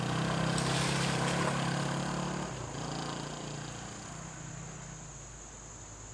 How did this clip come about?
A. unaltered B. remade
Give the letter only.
A